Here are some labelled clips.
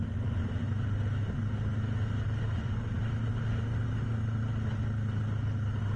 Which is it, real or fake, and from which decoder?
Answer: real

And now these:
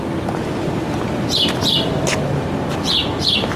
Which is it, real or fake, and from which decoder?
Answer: real